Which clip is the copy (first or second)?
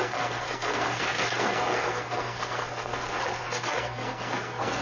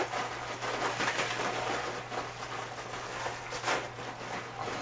first